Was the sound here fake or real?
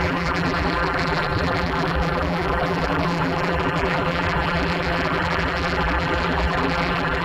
fake